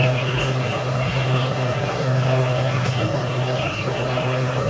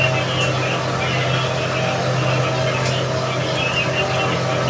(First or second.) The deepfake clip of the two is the first